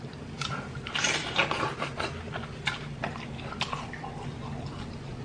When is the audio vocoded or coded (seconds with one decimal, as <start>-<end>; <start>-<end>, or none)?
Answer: none

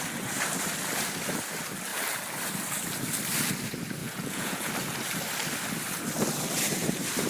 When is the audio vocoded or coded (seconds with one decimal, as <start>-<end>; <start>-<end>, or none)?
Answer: 4.0-4.7

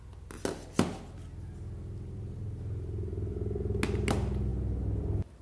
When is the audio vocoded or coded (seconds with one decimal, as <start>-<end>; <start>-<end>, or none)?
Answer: none

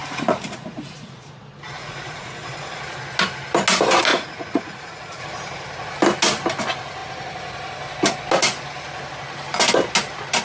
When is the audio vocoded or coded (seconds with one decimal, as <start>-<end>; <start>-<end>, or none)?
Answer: 0.0-1.4; 1.8-2.8; 4.1-5.2